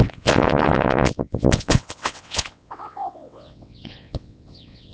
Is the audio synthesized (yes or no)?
yes